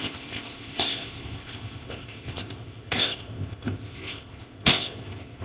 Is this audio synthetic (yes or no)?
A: yes